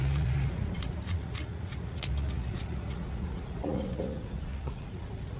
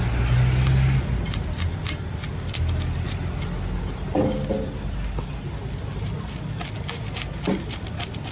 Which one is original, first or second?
second